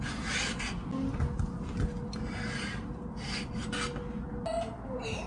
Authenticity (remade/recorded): recorded